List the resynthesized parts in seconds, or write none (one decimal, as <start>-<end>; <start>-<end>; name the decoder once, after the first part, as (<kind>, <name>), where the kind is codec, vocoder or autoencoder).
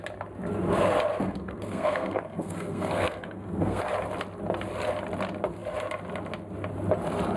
1.1-3.8 (codec, SNAC)